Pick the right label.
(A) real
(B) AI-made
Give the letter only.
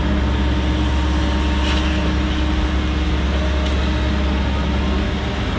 A